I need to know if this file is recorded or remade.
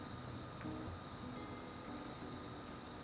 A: recorded